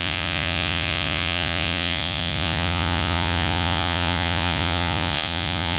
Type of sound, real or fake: fake